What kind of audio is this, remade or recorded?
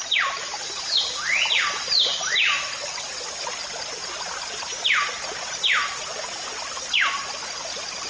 recorded